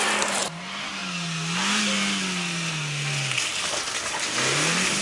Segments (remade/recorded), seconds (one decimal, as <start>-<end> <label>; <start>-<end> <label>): 0.0-5.0 recorded